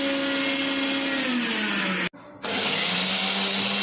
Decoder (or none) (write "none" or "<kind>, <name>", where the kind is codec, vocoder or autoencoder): none